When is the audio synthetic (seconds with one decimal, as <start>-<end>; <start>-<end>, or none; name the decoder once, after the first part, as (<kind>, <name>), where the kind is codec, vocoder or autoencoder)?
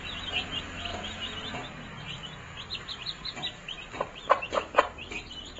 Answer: 0.9-1.5 (vocoder, BigVGAN v2); 2.7-5.6